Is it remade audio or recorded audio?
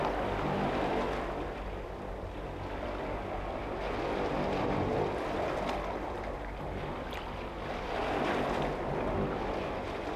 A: recorded